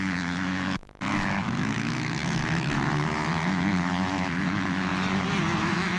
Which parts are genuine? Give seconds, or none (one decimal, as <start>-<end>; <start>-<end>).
4.9-5.6